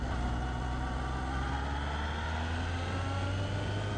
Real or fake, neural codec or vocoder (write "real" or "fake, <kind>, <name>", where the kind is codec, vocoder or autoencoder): real